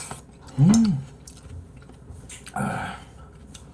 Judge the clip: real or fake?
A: real